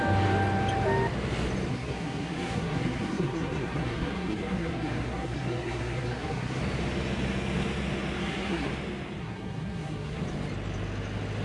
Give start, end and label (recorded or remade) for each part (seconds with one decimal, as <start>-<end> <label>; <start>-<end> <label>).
0.0-1.7 recorded; 1.7-6.6 remade; 6.6-8.2 recorded; 8.2-8.7 remade; 8.7-9.2 recorded; 9.2-10.2 remade; 10.2-11.4 recorded